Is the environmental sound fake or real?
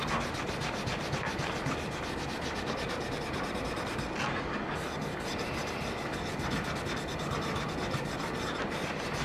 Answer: real